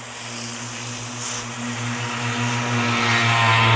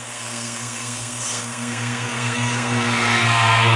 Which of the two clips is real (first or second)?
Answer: first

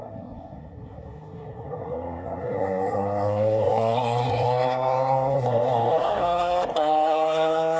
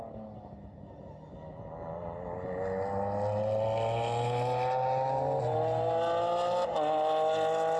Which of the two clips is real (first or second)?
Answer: second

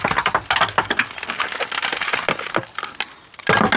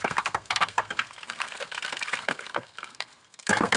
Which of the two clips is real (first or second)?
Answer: first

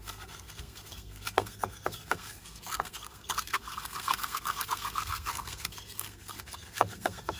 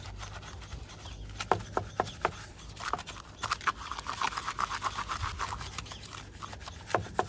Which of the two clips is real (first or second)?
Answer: second